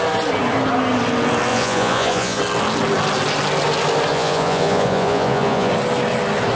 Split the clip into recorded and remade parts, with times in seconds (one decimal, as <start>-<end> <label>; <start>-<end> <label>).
0.0-1.5 recorded; 1.5-2.4 remade; 2.4-4.1 recorded; 4.1-5.7 remade; 5.7-6.6 recorded